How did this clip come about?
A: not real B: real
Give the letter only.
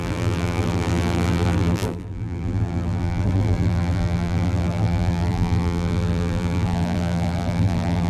A